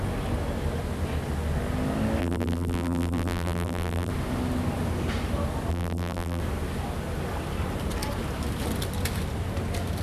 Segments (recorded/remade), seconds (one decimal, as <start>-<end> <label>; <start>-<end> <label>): 0.0-2.2 recorded; 2.2-4.1 remade; 4.1-5.7 recorded; 5.7-6.4 remade; 6.4-10.0 recorded